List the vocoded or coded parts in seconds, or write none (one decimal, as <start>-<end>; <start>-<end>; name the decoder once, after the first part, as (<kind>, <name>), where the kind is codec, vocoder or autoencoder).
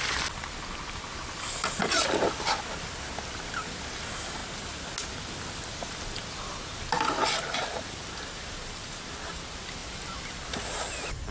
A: none